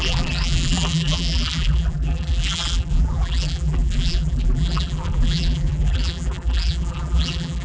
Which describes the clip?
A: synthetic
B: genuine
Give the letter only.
A